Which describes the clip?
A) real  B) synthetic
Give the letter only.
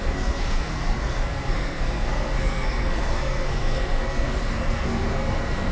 B